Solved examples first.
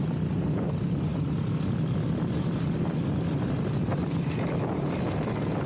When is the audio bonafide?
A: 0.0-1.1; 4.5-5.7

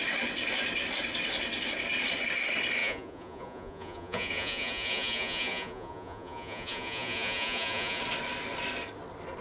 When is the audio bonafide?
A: 0.0-2.8; 8.0-9.4

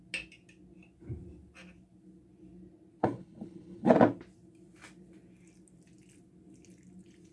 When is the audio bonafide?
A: 0.0-3.0; 3.9-7.3